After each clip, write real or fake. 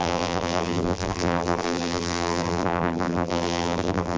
fake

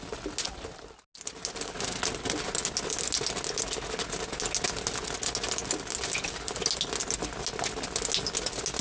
real